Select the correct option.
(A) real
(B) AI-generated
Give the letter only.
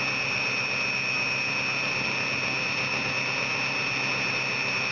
A